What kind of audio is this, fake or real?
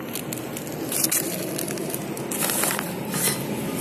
real